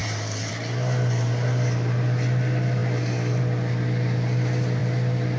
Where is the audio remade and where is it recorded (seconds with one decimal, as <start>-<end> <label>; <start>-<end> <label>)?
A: 0.0-0.5 remade; 0.5-5.4 recorded